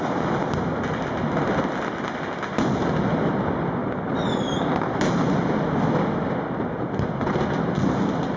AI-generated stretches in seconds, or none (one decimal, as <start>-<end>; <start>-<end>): none